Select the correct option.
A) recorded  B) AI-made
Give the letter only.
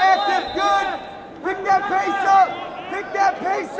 A